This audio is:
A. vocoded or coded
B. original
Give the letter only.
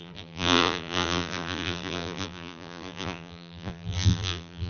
A